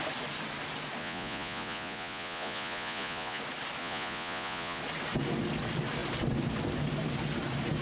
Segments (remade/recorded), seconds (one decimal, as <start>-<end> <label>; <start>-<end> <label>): 0.0-1.0 recorded; 1.0-3.4 remade; 3.4-3.8 recorded; 3.8-4.8 remade; 4.8-7.8 recorded